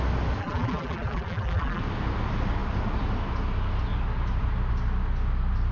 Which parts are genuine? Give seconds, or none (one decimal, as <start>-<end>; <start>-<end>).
0.0-0.4; 1.8-5.7